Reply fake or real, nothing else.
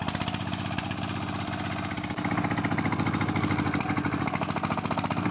real